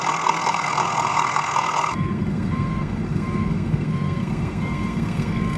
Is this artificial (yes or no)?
yes